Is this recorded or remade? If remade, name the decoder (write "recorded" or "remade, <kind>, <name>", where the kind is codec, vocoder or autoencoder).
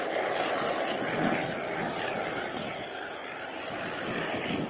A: recorded